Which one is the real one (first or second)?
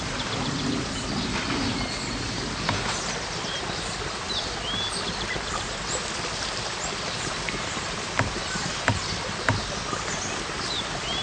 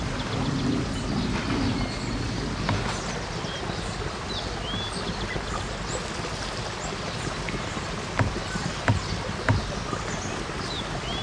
second